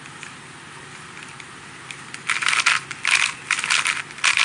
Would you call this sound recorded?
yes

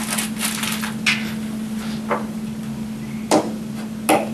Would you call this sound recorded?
yes